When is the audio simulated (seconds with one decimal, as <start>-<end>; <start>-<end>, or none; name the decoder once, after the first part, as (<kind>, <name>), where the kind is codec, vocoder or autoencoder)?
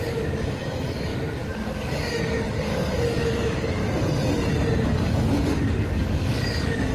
0.0-3.8 (codec, DAC); 4.8-6.9